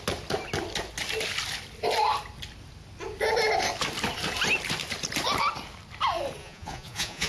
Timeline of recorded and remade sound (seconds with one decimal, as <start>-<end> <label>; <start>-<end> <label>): 0.0-6.4 recorded; 6.4-7.3 remade